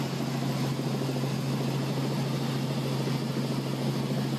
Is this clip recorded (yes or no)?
yes